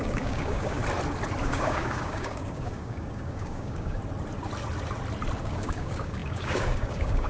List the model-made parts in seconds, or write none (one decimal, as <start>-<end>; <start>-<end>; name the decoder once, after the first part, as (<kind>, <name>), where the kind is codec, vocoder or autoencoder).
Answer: 0.0-0.8 (codec, DAC); 1.4-4.0; 5.4-7.3